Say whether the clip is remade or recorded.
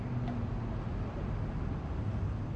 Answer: recorded